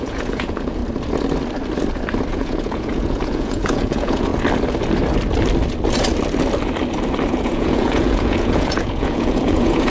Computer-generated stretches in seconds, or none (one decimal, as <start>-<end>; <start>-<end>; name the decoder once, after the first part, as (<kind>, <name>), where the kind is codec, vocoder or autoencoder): 0.0-0.8 (vocoder, Vocos); 2.3-4.3; 7.3-9.9